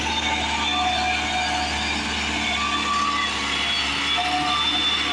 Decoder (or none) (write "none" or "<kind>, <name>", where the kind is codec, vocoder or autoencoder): none